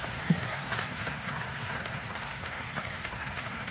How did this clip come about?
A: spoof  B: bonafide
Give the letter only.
A